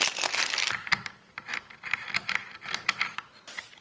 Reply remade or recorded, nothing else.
recorded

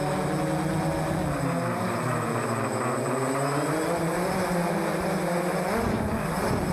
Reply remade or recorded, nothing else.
recorded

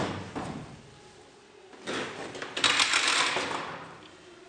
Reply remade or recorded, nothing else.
recorded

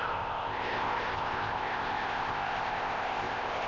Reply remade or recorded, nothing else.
remade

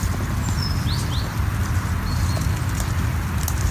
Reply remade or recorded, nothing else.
recorded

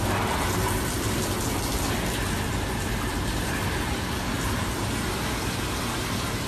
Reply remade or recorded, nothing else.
recorded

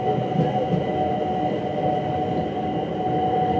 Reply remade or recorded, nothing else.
recorded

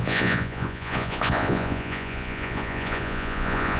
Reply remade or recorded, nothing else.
remade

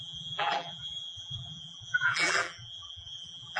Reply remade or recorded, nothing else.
remade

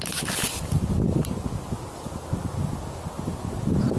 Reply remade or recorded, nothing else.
recorded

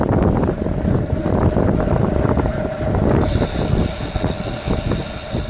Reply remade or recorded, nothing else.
recorded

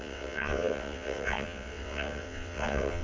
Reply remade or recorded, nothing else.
remade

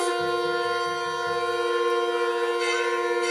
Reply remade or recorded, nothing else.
recorded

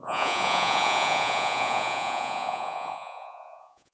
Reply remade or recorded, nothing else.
remade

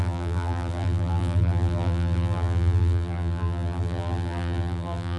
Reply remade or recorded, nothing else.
remade